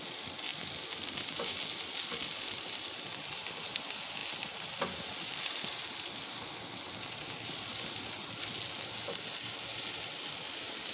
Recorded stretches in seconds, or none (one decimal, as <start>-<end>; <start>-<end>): 0.0-10.9